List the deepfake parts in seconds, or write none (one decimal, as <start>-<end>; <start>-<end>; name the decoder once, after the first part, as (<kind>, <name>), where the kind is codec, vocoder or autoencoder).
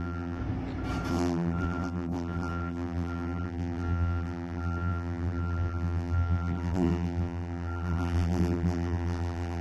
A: 0.0-0.4 (vocoder, BigVGAN v2); 1.1-9.6